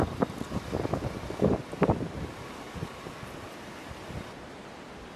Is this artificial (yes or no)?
no